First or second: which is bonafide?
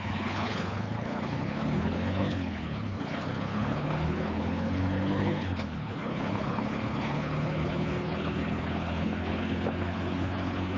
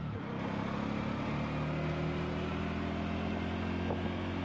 second